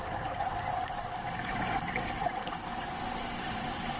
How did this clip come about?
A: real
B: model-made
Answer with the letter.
A